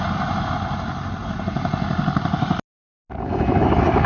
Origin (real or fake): real